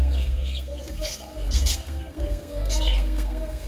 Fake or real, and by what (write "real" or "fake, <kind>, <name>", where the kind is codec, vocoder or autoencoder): fake, codec, SNAC